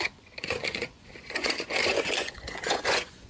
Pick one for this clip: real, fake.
fake